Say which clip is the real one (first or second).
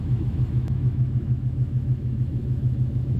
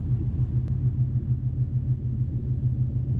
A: second